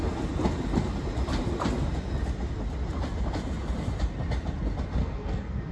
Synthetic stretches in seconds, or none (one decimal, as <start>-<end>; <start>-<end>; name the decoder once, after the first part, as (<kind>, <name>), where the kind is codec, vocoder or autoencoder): 5.0-5.7 (codec, SNAC)